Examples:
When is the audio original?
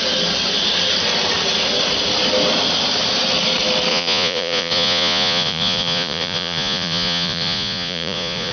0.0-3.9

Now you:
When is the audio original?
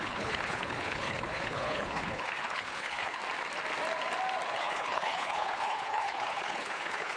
3.2-4.5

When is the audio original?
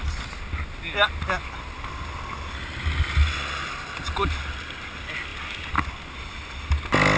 0.0-7.2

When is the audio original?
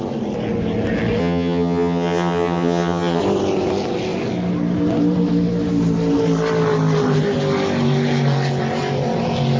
0.0-1.2; 3.2-9.6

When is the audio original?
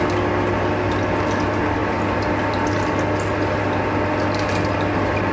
0.0-5.3